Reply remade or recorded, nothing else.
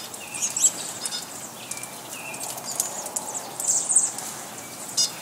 recorded